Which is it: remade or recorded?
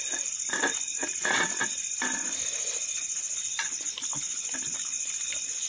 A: recorded